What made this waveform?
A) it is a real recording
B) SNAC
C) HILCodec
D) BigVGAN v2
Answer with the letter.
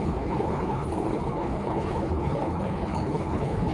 C